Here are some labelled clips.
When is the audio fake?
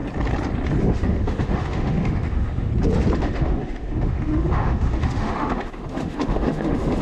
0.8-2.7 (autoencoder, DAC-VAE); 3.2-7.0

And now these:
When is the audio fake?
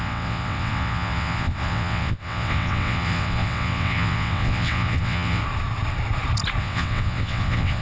0.0-5.4 (vocoder, WaveNeXt); 6.6-7.8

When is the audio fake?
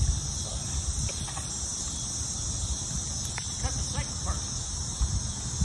0.5-1.2 (vocoder, BigVGAN v2); 1.7-4.2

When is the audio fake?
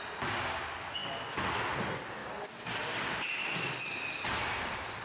none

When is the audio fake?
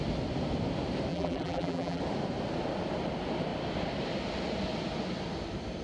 1.1-2.0 (vocoder, BigVGAN v2)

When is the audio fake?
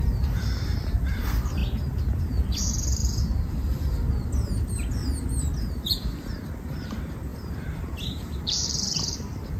0.0-1.6 (vocoder, BigVGAN v2); 2.2-3.0; 5.6-9.6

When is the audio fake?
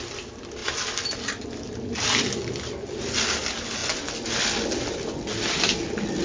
none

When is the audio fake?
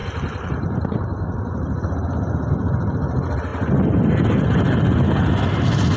0.0-2.5 (vocoder, BigVGAN v2)